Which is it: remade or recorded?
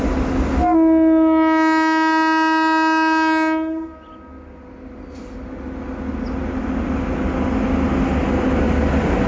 recorded